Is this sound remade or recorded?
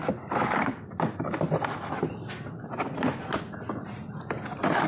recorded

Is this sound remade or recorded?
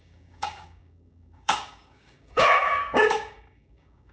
remade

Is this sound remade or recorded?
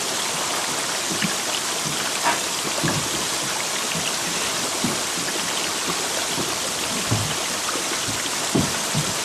recorded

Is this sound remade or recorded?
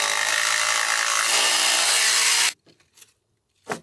recorded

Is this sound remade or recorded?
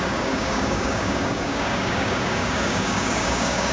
remade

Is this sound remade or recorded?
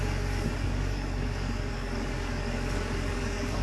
remade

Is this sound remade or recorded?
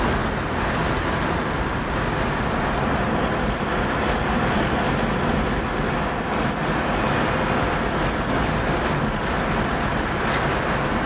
recorded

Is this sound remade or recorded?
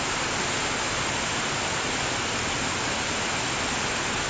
recorded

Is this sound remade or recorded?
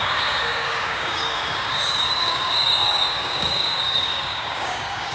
remade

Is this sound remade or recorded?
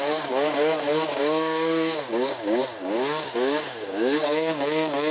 remade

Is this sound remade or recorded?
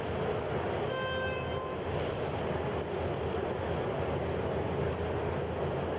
recorded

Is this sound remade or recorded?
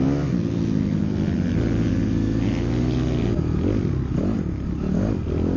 recorded